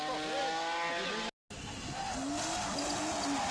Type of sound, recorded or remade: recorded